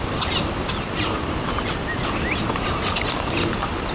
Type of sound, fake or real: real